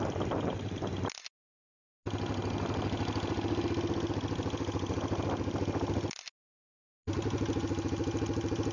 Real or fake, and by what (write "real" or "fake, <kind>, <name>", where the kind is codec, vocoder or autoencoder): real